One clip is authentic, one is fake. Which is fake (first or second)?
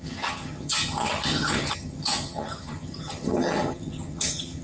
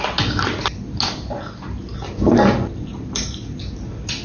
first